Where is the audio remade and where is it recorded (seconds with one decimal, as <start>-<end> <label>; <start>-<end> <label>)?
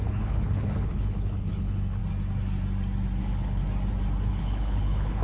0.0-2.0 remade; 2.0-3.2 recorded; 3.2-3.6 remade; 3.6-4.3 recorded; 4.3-5.2 remade